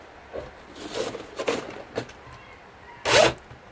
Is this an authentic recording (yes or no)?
yes